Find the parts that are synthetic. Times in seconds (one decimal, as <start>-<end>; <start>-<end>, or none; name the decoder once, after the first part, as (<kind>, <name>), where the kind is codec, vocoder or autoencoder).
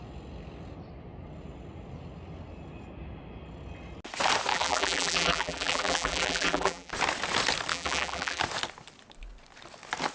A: 4.5-6.9 (vocoder, BigVGAN v2); 7.7-8.4